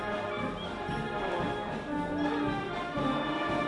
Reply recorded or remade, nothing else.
recorded